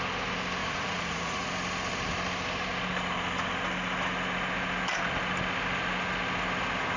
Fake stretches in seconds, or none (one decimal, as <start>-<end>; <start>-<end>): 0.6-1.5